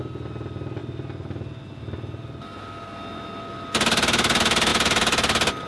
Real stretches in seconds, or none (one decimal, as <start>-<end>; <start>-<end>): 0.0-5.7